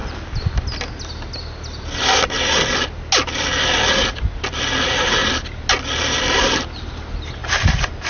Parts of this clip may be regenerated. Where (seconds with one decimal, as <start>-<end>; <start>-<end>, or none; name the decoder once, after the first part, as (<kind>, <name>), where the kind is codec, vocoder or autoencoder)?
none